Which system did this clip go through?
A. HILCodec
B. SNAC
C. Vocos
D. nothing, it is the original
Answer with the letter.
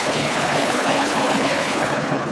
A